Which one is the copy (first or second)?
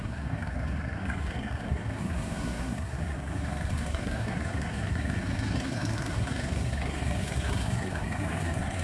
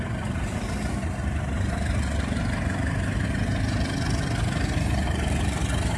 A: first